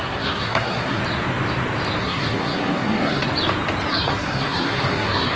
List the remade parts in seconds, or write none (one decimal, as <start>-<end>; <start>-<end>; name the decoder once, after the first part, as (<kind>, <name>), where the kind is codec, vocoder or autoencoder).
0.0-1.0 (codec, SNAC); 2.0-3.3; 3.9-5.4